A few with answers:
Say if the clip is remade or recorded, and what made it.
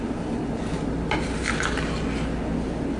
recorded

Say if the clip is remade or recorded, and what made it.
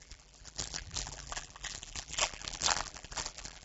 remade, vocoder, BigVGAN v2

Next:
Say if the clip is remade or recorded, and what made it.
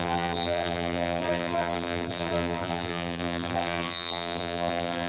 remade, vocoder, BigVGAN v2